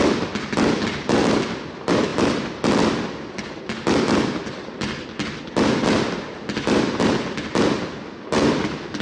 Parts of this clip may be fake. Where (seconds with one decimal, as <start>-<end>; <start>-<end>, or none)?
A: none